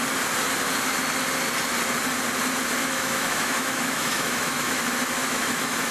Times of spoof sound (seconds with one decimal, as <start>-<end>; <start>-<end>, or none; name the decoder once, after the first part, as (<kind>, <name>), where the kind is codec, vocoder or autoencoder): 2.8-4.8 (autoencoder, DAC-VAE); 5.2-5.9